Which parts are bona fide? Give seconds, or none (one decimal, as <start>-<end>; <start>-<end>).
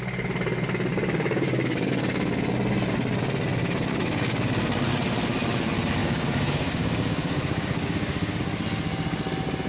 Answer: 0.0-0.9; 1.9-6.0; 8.4-9.7